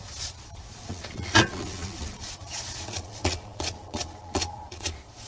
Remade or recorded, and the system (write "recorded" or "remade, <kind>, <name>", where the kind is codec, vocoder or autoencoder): remade, vocoder, Vocos